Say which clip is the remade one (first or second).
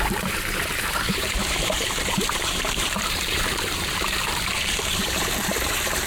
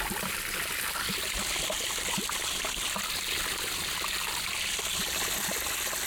first